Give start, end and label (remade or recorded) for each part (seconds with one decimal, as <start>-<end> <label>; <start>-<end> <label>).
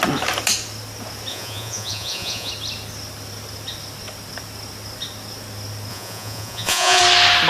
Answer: 0.0-1.3 recorded; 1.3-2.5 remade; 2.5-5.9 recorded; 5.9-7.0 remade; 7.0-7.5 recorded